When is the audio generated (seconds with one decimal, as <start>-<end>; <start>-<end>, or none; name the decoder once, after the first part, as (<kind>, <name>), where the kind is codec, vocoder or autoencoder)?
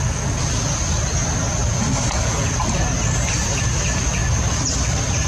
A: 1.6-2.6 (vocoder, Vocos)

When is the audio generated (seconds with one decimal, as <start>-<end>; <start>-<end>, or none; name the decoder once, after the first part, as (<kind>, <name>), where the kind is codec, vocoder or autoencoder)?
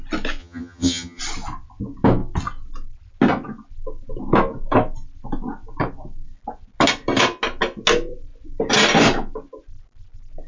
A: 0.4-1.2 (vocoder, HiFi-GAN)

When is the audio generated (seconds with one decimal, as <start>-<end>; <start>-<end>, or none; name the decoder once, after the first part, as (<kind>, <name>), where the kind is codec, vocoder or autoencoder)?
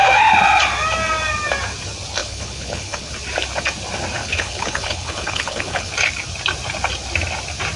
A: 2.2-3.1 (codec, HILCodec); 4.2-5.9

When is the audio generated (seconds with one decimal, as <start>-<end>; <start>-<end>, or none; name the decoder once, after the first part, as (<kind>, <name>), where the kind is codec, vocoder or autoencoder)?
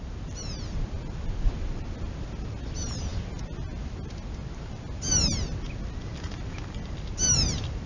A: none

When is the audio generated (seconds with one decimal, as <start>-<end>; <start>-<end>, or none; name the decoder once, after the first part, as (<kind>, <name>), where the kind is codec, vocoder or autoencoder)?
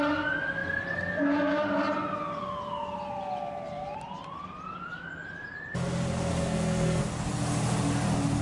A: 6.3-7.0 (codec, SNAC)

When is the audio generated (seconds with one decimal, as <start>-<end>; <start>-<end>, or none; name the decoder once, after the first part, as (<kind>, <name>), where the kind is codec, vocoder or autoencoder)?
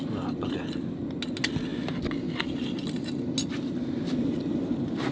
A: none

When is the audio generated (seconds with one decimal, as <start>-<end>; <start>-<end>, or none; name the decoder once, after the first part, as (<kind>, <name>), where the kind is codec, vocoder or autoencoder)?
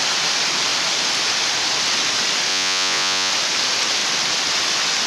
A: 2.5-3.3 (vocoder, Vocos)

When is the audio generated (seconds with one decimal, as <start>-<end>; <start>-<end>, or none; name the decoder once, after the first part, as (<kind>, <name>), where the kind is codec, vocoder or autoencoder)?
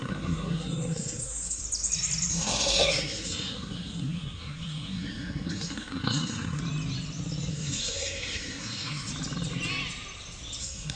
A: 0.0-1.6 (codec, SNAC); 2.3-6.6; 7.5-9.1; 10.6-11.0